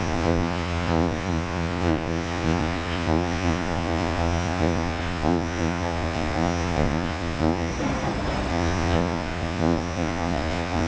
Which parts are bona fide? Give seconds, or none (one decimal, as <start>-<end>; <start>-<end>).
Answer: 7.7-8.5